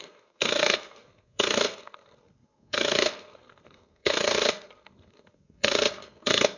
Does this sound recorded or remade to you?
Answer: remade